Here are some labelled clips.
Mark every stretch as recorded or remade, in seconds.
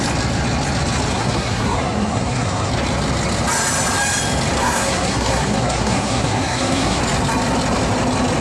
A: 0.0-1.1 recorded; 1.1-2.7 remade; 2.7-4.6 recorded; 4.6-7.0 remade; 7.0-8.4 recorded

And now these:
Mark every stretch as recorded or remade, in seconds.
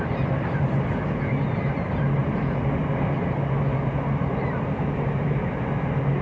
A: 0.0-6.2 recorded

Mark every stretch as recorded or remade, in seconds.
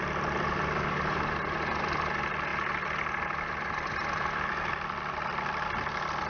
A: 0.0-6.3 recorded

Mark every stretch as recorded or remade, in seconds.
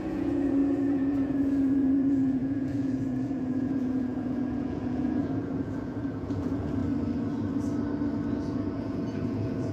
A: 0.0-6.8 remade; 6.8-8.3 recorded; 8.3-9.7 remade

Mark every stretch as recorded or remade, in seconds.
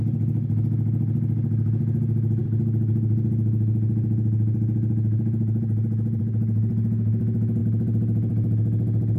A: 0.0-9.2 recorded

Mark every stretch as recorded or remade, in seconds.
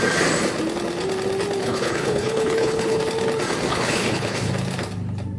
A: 0.0-1.6 recorded; 1.6-3.0 remade; 3.0-3.7 recorded; 3.7-4.5 remade; 4.5-5.4 recorded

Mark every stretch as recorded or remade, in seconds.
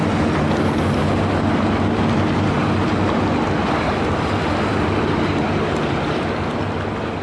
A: 0.0-2.6 recorded; 2.6-6.6 remade; 6.6-7.2 recorded